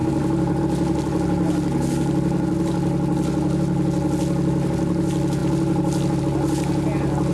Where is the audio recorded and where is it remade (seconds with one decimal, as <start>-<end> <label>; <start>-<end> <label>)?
0.0-0.6 remade; 0.6-7.3 recorded